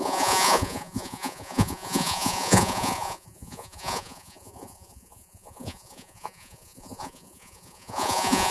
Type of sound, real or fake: fake